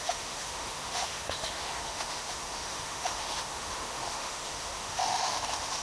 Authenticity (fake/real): fake